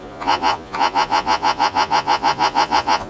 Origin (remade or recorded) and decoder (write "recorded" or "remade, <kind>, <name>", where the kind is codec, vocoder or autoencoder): remade, vocoder, Vocos